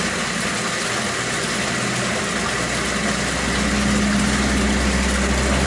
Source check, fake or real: real